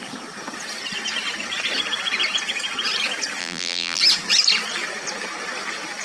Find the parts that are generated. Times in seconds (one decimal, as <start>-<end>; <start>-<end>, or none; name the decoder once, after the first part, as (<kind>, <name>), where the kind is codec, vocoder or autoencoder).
3.4-4.0 (vocoder, BigVGAN v2)